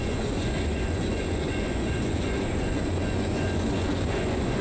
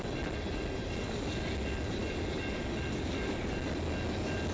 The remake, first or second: first